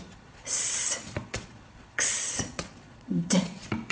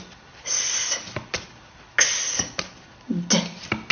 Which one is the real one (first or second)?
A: second